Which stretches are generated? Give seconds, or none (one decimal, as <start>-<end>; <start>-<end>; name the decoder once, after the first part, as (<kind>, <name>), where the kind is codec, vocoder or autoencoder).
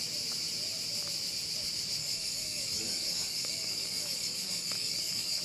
2.0-5.4 (codec, DAC)